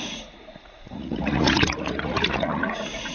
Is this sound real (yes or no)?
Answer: no